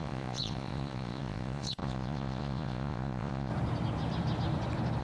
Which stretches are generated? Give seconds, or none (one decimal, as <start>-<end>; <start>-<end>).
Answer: 0.0-3.5